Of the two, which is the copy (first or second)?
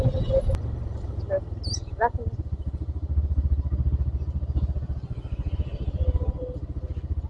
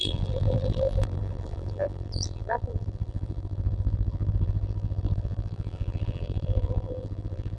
second